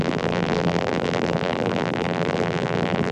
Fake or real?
fake